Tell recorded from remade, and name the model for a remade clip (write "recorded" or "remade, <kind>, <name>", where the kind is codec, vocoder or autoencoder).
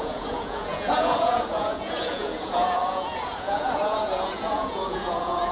remade, vocoder, Vocos